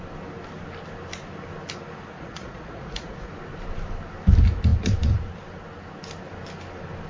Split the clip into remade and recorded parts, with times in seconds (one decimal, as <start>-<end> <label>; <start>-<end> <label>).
0.0-2.1 recorded; 2.1-3.3 remade; 3.3-7.1 recorded